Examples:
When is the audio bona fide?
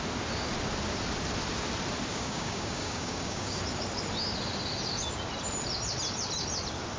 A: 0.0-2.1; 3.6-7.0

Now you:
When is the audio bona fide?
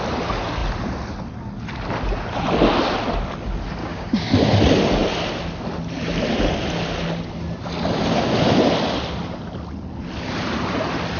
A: 0.0-3.8; 4.3-11.2